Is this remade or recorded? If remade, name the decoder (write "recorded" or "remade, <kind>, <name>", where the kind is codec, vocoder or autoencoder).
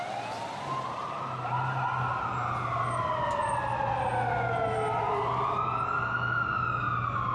recorded